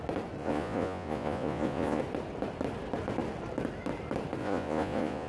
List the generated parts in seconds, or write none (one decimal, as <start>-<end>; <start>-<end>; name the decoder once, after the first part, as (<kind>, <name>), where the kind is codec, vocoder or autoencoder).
0.4-2.0 (vocoder, Vocos); 4.4-5.3